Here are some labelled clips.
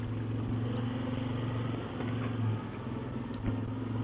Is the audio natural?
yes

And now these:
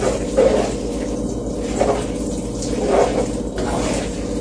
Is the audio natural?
yes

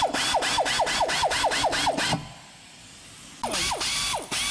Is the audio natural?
yes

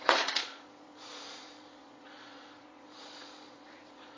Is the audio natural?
no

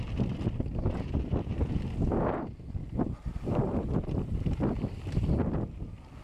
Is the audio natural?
yes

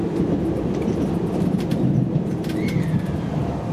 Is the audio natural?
yes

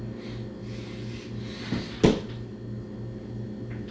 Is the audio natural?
yes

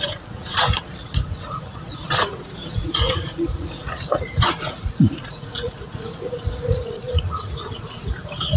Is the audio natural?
no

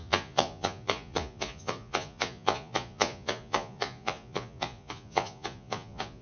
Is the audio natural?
no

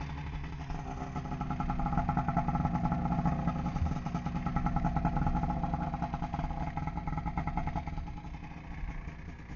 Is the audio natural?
yes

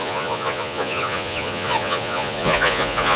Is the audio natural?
no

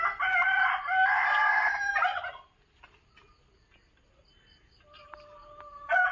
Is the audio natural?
yes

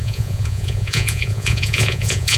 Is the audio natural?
no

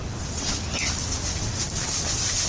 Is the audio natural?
yes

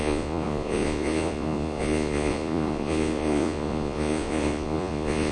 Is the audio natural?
no